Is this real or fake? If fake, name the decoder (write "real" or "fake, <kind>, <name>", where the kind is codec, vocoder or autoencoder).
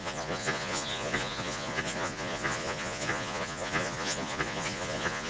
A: fake, vocoder, Vocos